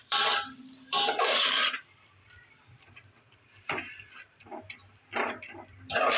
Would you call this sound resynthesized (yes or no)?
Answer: yes